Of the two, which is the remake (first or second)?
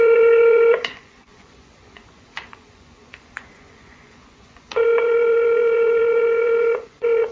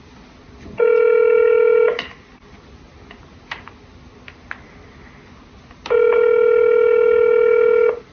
first